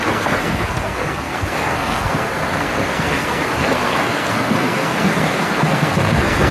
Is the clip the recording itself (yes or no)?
no